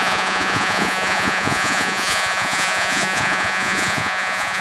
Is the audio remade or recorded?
remade